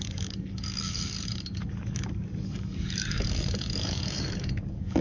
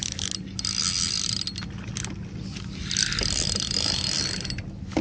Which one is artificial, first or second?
first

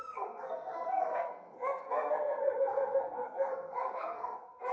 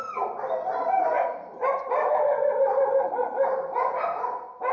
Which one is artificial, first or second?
first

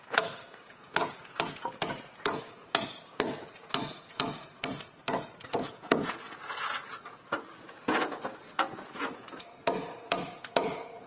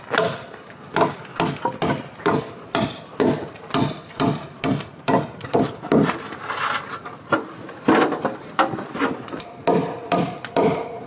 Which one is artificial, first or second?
first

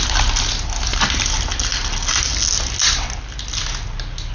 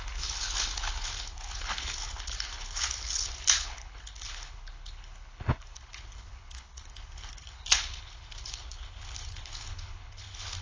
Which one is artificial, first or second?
second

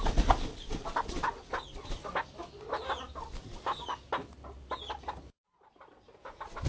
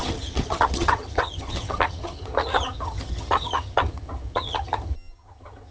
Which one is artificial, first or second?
second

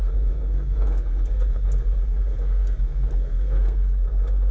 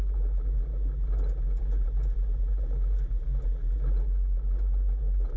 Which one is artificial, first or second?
first